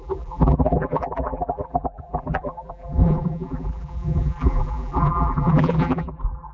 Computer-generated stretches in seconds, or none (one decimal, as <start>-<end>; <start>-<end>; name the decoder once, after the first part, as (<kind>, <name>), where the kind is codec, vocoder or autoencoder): 0.0-6.5 (vocoder, BigVGAN v2)